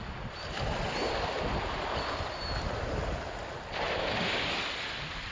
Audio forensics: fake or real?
real